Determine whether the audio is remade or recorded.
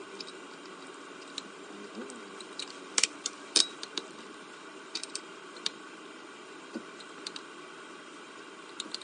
remade